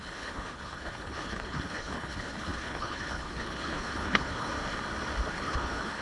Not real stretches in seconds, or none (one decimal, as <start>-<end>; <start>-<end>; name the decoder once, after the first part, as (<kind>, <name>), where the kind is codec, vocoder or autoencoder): 0.0-4.5 (codec, HILCodec); 5.3-6.0